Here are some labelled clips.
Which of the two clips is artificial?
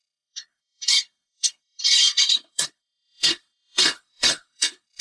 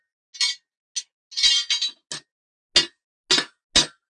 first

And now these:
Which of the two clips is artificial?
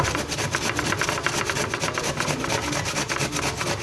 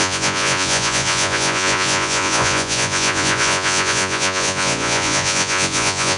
second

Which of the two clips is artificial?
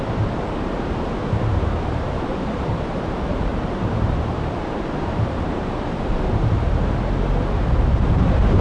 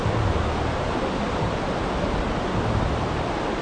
first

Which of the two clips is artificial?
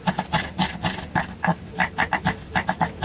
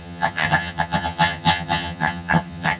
second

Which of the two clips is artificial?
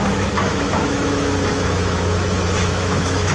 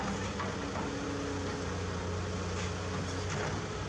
first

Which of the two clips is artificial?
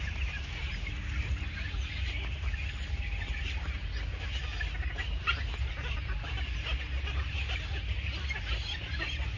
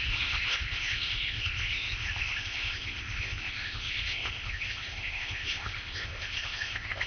second